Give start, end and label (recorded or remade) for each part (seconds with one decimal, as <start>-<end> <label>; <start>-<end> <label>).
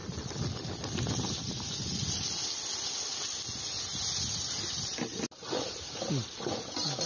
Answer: 0.0-7.1 recorded